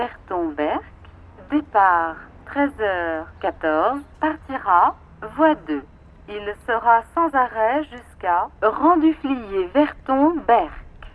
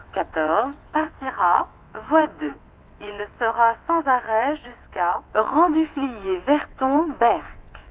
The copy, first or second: second